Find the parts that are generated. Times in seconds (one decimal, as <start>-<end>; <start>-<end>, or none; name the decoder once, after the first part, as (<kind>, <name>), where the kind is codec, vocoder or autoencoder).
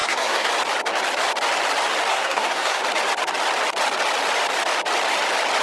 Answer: 0.0-0.5 (codec, SNAC); 2.1-2.8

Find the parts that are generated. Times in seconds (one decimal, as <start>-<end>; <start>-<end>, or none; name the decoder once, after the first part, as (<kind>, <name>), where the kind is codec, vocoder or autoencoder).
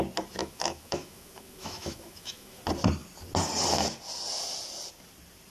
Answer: 0.4-2.6 (autoencoder, DAC-VAE)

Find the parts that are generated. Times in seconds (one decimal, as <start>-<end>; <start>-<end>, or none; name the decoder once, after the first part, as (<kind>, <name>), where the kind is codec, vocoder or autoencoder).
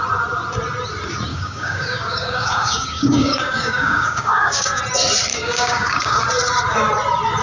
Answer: 1.3-4.8 (codec, DAC); 5.3-6.2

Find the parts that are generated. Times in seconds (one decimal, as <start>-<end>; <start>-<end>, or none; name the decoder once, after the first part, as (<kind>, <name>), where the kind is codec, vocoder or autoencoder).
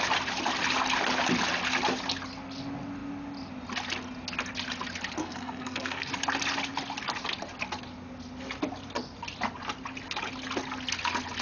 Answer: 5.2-6.1 (codec, SNAC)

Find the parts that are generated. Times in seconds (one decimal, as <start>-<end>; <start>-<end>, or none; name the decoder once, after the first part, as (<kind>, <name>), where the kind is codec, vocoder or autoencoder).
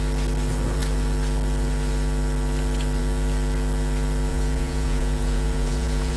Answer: 4.3-6.2 (vocoder, Vocos)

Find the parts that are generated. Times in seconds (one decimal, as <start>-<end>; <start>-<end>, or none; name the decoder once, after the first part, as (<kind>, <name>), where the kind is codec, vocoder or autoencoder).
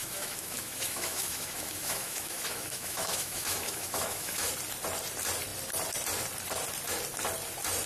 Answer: 0.0-4.5 (autoencoder, DAC-VAE)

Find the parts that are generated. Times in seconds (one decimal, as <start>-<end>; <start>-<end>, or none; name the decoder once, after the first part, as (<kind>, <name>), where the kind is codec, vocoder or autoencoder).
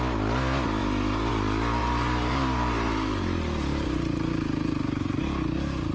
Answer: 0.8-1.3 (vocoder, BigVGAN v2); 1.8-5.2